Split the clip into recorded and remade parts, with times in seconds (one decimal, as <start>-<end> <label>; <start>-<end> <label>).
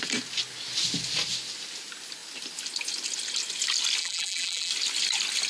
0.0-4.0 recorded; 4.0-4.7 remade; 4.7-5.5 recorded